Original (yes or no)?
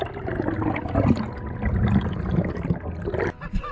yes